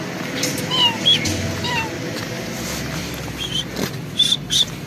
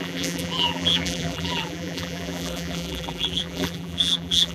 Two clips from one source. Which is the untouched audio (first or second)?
first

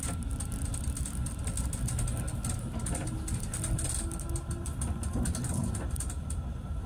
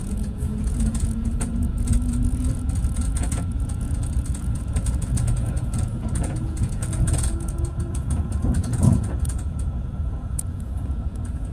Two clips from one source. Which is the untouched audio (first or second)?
first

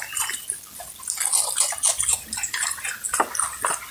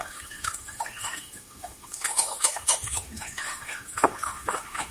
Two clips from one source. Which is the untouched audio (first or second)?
first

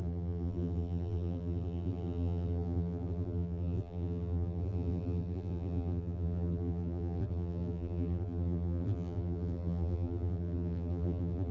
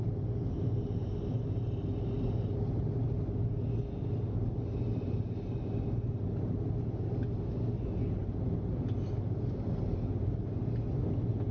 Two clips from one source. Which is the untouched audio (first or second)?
second